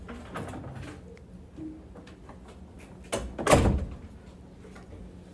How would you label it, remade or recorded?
recorded